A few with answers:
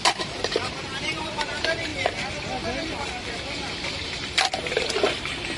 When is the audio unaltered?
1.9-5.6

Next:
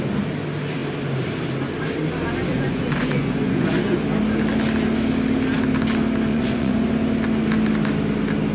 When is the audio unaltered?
0.0-2.5; 4.0-6.3; 6.9-8.5

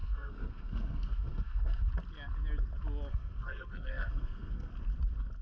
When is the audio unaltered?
1.9-3.1; 4.7-5.4

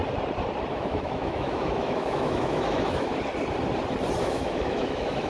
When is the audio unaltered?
0.0-0.7; 3.1-4.2

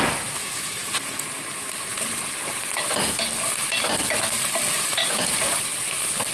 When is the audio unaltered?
0.0-0.4; 1.4-5.0; 5.6-6.3

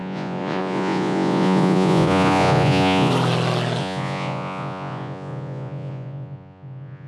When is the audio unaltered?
3.1-3.8

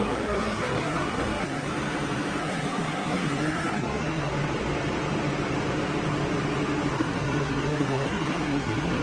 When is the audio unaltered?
1.7-2.4; 4.3-6.9